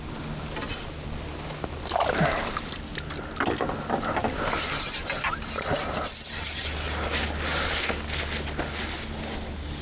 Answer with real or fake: real